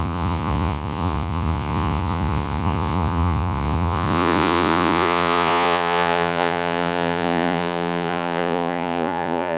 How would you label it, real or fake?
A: fake